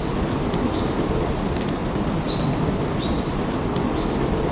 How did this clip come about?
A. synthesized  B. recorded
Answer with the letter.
B